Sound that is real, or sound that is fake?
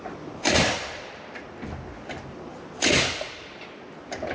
real